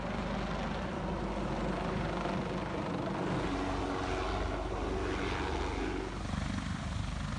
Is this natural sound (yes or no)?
yes